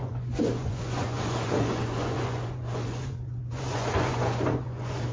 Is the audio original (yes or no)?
no